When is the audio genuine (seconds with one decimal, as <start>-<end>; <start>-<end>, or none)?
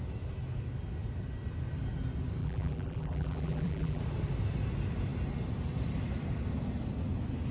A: 0.0-2.4; 4.0-7.5